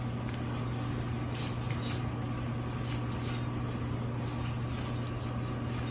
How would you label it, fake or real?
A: real